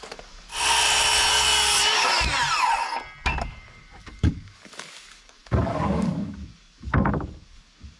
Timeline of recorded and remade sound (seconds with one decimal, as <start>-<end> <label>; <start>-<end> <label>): 0.0-0.5 remade; 0.5-1.3 recorded; 1.3-2.1 remade; 2.1-3.4 recorded; 3.4-8.0 remade

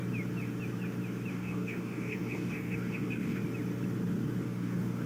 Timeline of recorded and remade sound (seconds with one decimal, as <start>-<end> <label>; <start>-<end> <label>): 0.0-1.3 recorded; 1.3-3.4 remade; 3.4-4.4 recorded; 4.4-5.1 remade

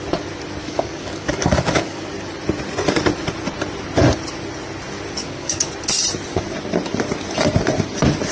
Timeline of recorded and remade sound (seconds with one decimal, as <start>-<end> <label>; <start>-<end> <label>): 0.0-0.6 recorded; 0.6-2.1 remade; 2.1-5.2 recorded; 5.2-5.7 remade; 5.7-8.3 recorded

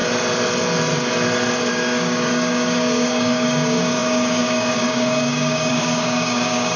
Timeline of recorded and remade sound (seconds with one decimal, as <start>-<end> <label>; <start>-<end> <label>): 0.0-1.7 recorded; 1.7-6.8 remade